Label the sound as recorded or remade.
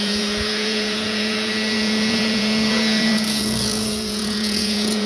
remade